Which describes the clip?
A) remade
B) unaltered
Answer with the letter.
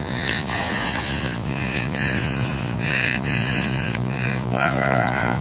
A